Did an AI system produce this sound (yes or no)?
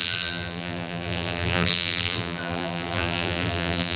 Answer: yes